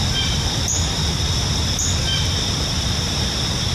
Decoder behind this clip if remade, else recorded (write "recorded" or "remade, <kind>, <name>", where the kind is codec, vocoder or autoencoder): recorded